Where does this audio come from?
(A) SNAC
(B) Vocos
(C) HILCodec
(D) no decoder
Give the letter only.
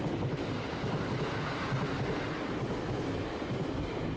D